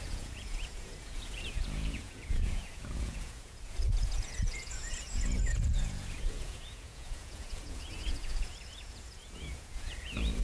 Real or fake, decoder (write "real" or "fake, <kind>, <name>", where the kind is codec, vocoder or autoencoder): fake, vocoder, Vocos